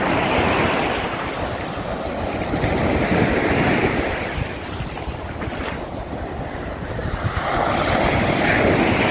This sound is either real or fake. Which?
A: real